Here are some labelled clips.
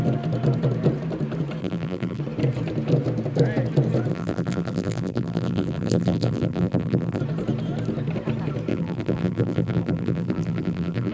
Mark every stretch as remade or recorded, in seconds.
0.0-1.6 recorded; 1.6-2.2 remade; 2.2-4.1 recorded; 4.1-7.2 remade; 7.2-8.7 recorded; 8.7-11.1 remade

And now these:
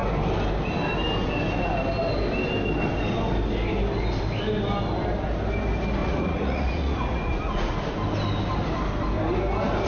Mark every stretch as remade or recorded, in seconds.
0.0-6.0 recorded; 6.0-7.8 remade; 7.8-9.9 recorded

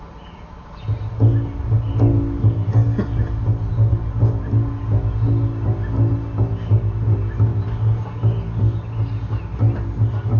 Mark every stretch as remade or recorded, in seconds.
0.0-10.4 recorded

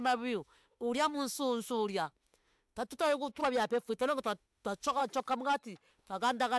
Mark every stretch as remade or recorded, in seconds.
0.0-3.4 remade; 3.4-3.9 recorded; 3.9-5.0 remade; 5.0-5.9 recorded; 5.9-6.6 remade

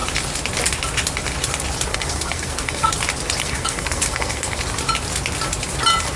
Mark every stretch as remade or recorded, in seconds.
0.0-1.9 recorded; 1.9-2.9 remade; 2.9-3.4 recorded; 3.4-4.6 remade; 4.6-6.2 recorded

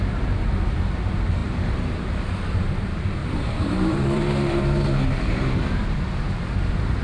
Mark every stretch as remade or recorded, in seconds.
0.0-7.0 remade